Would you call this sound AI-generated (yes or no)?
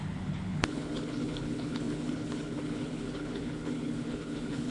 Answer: yes